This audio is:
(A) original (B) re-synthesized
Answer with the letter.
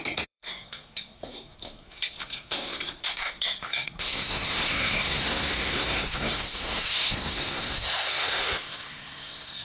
B